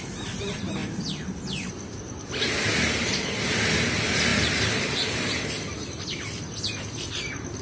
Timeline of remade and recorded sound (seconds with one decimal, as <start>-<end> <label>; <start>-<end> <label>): 0.0-7.6 recorded